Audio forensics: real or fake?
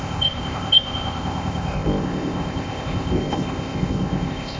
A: fake